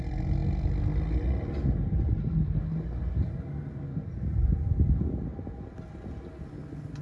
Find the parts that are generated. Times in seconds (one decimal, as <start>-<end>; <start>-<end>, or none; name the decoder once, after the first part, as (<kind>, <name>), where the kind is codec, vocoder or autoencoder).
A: none